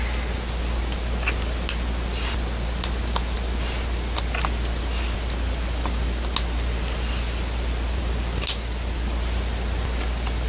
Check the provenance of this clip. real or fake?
real